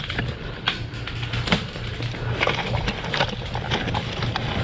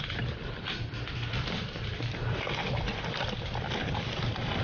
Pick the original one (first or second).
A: first